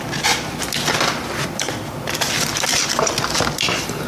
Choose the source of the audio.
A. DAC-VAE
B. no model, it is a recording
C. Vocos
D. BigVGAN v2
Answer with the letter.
B